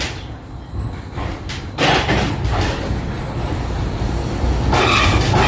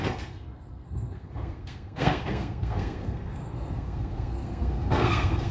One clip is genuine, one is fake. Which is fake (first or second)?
second